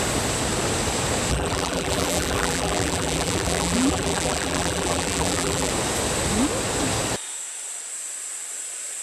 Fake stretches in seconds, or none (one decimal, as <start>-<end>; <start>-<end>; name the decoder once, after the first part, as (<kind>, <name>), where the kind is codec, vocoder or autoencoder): 1.3-5.7 (vocoder, BigVGAN v2)